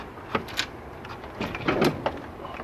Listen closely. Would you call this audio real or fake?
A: real